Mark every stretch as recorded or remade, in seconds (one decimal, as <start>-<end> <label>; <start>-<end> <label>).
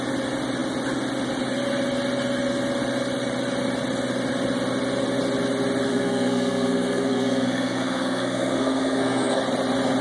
0.0-5.9 recorded; 5.9-9.4 remade; 9.4-10.0 recorded